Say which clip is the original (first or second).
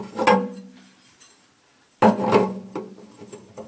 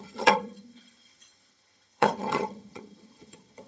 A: first